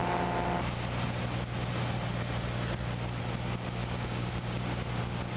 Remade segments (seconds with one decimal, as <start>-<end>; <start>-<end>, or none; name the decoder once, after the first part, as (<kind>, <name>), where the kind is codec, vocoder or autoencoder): 3.8-4.6 (codec, DAC)